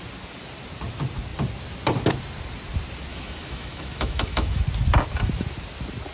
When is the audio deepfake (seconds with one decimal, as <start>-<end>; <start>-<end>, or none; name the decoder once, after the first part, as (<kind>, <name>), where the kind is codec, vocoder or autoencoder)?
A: 3.1-4.6 (autoencoder, DAC-VAE)